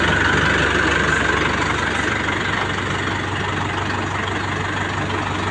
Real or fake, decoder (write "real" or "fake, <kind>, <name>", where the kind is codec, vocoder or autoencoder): real